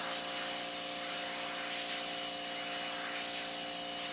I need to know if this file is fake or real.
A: real